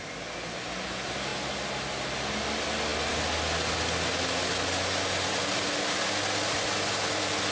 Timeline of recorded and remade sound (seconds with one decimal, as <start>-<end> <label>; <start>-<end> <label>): 0.0-7.5 recorded